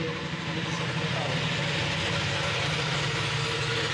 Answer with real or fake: real